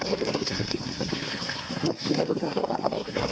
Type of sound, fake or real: fake